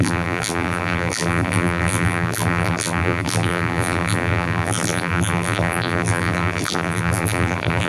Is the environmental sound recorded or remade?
remade